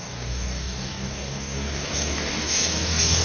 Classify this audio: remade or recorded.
remade